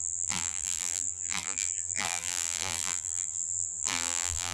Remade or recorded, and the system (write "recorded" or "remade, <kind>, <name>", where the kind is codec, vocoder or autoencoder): remade, vocoder, BigVGAN v2